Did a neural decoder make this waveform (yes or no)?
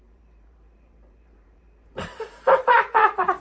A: yes